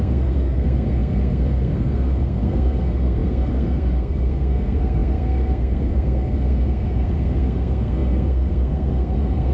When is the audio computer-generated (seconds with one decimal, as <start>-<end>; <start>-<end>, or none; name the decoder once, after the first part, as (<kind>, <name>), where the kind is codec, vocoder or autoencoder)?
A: 0.0-9.5 (codec, SNAC)